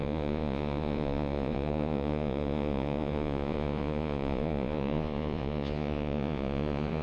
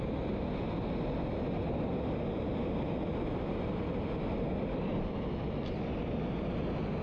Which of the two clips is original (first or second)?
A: second